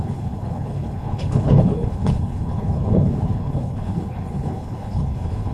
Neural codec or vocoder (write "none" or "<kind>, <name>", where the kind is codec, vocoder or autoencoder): codec, HILCodec